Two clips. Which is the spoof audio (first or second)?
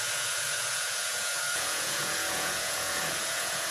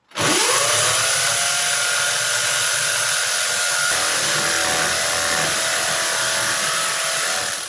first